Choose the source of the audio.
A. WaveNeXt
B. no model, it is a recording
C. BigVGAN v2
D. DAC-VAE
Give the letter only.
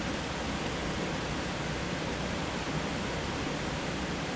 B